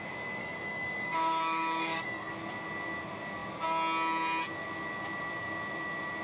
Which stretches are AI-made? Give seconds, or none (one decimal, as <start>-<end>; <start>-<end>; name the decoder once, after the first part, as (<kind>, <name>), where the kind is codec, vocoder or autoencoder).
0.4-2.3 (codec, DAC)